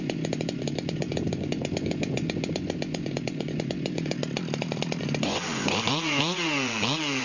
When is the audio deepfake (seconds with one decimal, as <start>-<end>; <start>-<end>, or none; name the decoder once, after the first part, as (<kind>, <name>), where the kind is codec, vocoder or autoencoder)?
0.0-4.2 (vocoder, Vocos); 5.0-7.2